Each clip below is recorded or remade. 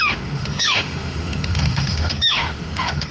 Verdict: remade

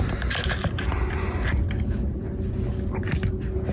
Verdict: recorded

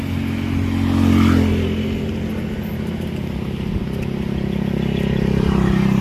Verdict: recorded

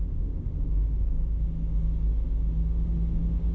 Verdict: remade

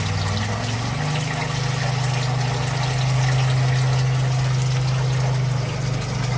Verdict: recorded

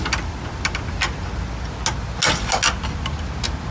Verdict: recorded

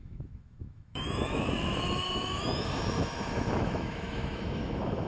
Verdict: remade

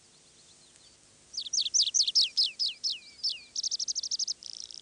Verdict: recorded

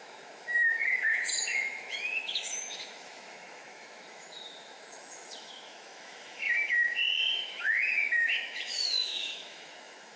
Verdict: remade